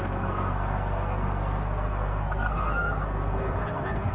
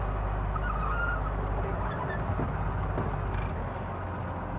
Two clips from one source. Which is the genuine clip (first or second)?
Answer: second